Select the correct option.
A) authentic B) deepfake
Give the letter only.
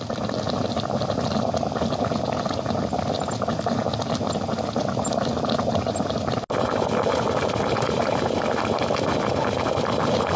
A